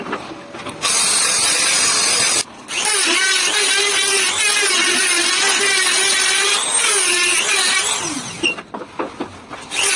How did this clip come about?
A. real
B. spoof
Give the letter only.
A